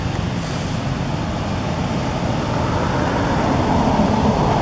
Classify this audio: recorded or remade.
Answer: recorded